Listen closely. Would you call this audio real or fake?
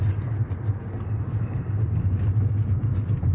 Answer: real